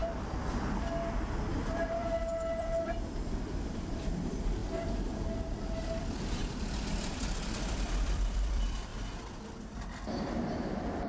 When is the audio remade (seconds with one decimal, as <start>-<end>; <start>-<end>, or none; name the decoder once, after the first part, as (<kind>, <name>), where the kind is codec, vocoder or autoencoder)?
2.6-4.6 (vocoder, BigVGAN v2); 6.8-8.9; 9.6-11.1